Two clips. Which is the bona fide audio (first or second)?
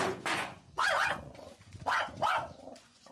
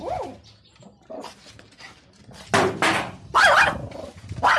second